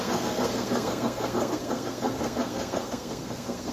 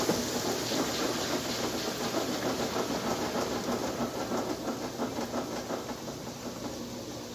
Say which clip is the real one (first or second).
second